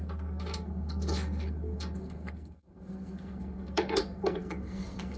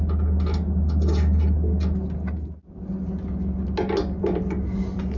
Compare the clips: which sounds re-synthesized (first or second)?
first